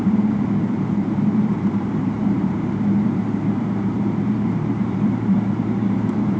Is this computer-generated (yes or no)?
yes